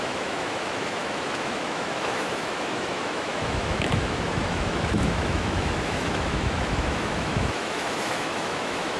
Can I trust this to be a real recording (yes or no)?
no